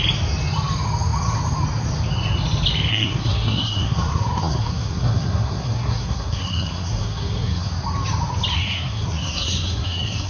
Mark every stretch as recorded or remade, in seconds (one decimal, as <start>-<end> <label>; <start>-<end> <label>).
0.0-2.9 recorded; 2.9-7.7 remade; 7.7-8.5 recorded; 8.5-10.3 remade